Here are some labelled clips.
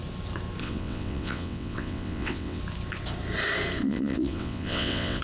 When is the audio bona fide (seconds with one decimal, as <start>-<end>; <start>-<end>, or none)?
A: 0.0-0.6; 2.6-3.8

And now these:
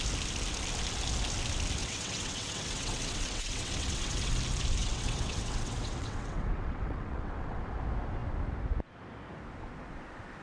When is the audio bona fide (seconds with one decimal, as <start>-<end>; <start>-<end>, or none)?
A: 0.0-1.8; 4.3-4.8; 7.6-10.4

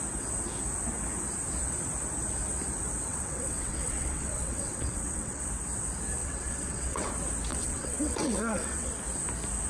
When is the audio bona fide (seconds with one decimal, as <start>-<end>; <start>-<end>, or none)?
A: 0.0-3.1; 5.4-6.2; 7.1-7.5; 8.9-9.7